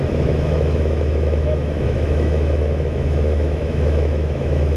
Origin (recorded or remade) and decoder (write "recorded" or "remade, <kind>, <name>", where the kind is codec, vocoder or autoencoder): remade, autoencoder, DAC-VAE